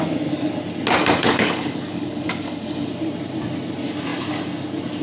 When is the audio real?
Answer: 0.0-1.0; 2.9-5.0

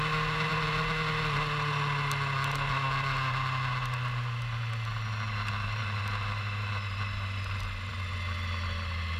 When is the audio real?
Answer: 0.0-9.2

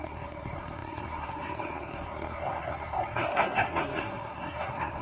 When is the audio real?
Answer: none

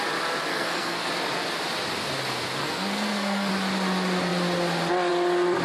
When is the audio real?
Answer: 0.0-0.5; 1.1-2.6; 3.5-5.6

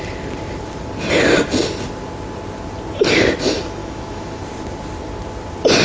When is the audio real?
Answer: 0.0-3.8; 4.4-5.8

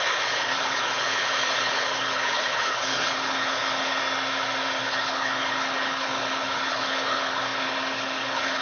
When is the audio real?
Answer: 4.0-4.8